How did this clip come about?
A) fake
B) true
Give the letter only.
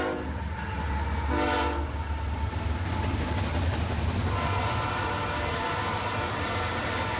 B